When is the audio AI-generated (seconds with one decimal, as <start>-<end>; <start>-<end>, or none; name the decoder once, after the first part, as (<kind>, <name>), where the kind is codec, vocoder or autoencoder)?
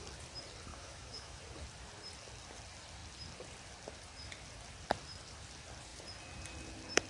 0.7-1.4 (autoencoder, DAC-VAE)